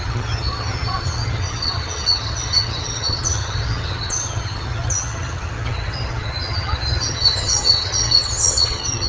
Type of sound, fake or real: fake